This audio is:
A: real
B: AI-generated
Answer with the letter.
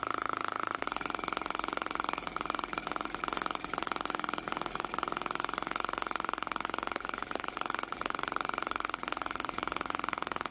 B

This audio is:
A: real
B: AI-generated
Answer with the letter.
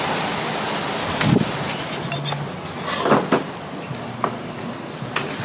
A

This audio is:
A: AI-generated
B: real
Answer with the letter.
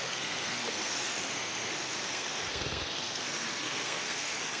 A